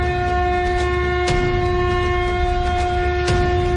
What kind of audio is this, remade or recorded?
recorded